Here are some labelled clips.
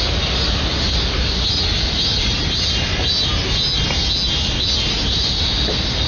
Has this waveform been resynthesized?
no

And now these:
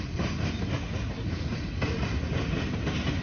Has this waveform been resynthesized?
no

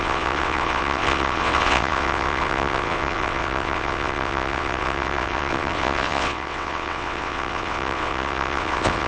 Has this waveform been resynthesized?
yes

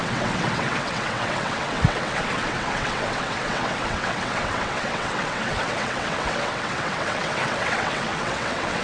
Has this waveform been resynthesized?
yes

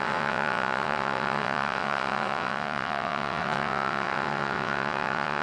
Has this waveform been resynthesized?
yes